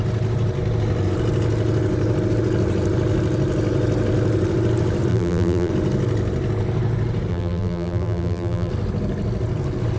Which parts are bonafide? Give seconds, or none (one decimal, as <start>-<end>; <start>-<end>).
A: 0.0-5.1; 5.7-7.3; 8.7-10.0